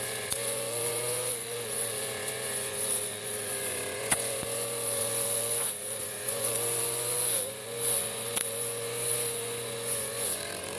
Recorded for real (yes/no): no